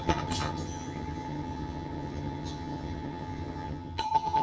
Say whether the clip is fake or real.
fake